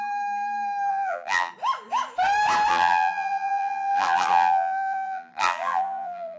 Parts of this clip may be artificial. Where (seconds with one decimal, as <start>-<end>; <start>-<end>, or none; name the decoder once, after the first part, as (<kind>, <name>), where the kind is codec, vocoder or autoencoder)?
0.9-1.5 (vocoder, BigVGAN v2); 2.7-6.4